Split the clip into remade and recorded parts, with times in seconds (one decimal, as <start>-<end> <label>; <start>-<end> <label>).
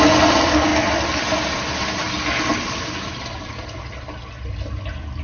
0.0-5.2 recorded